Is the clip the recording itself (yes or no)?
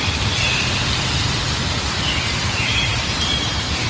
yes